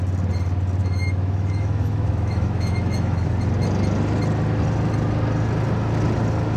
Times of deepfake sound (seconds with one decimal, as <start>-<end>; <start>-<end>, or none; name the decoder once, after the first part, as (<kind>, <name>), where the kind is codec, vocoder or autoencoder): 0.8-3.3 (autoencoder, DAC-VAE)